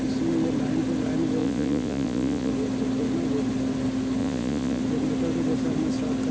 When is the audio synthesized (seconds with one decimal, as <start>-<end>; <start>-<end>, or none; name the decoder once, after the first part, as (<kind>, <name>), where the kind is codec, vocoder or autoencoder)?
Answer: 1.4-2.5 (vocoder, Vocos); 4.2-4.8